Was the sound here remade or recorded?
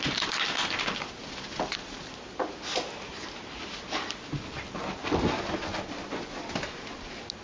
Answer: recorded